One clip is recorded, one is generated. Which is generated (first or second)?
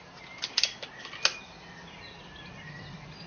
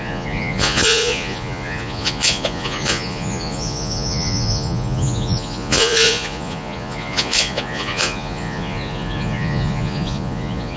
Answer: second